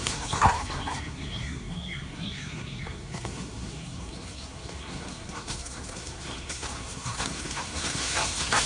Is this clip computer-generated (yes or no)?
yes